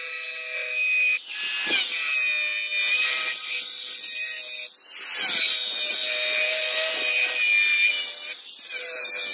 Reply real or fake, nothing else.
real